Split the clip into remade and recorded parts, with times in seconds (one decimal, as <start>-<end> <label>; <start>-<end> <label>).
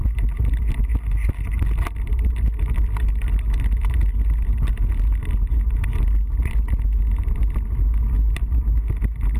0.0-9.4 recorded